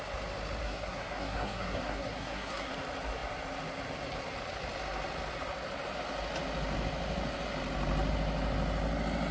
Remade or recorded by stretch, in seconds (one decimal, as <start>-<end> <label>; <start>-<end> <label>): 0.0-0.6 recorded; 0.6-2.7 remade; 2.7-9.3 recorded

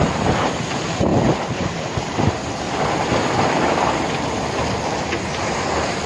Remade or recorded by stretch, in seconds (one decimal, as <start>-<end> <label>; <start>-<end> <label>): 0.0-1.1 recorded; 1.1-4.8 remade; 4.8-6.1 recorded

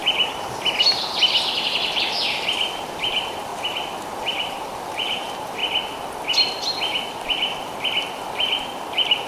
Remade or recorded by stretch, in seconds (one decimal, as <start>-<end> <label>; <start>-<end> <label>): 0.0-0.8 recorded; 0.8-3.5 remade; 3.5-4.2 recorded; 4.2-5.6 remade; 5.6-7.1 recorded; 7.1-9.3 remade

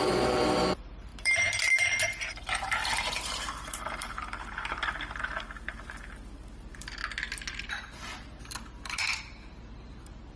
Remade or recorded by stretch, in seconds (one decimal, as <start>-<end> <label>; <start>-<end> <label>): 0.0-7.0 remade; 7.0-7.5 recorded; 7.5-10.4 remade